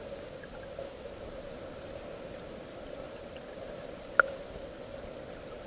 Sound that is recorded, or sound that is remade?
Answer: recorded